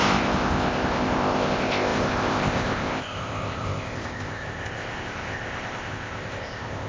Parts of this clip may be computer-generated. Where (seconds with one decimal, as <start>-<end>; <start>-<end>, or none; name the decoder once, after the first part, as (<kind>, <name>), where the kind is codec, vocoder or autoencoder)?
0.0-6.9 (codec, ZipCodec)